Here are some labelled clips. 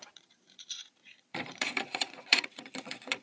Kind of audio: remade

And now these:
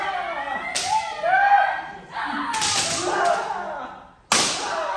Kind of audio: recorded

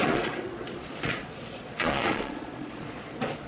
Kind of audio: remade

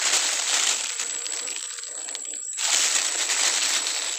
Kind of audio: recorded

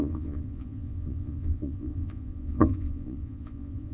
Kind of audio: remade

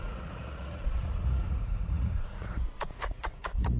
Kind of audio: remade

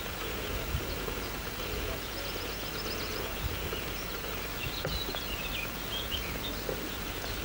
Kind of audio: remade